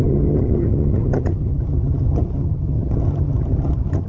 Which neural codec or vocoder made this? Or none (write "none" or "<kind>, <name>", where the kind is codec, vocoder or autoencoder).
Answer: vocoder, HiFi-GAN